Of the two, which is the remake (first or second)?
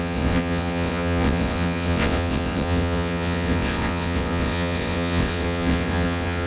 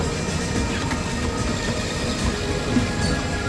first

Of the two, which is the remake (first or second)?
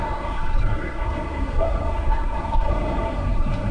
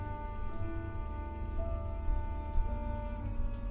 first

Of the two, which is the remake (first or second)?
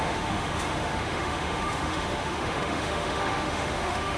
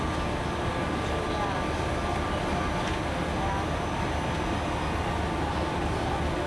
first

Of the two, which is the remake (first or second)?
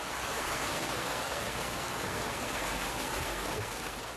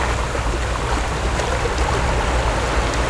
first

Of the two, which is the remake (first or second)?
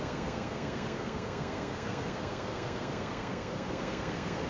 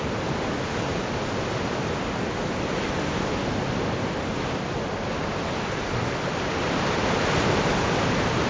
first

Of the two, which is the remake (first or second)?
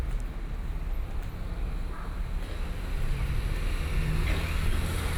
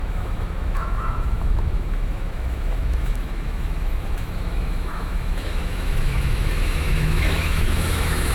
second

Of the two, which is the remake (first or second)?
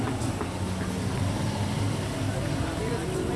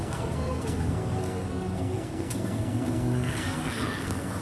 second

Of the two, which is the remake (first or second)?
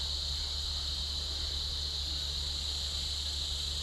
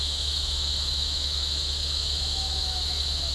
second